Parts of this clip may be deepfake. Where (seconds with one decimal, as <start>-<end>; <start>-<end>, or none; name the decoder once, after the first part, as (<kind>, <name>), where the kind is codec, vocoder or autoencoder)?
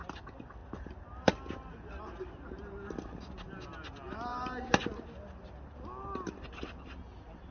none